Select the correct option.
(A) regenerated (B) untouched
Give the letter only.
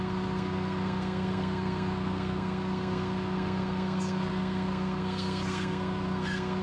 A